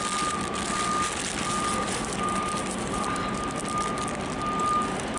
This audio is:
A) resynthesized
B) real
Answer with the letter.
B